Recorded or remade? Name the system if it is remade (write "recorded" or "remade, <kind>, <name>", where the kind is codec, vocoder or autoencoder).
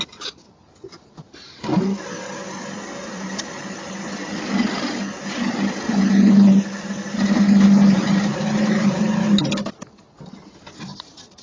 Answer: recorded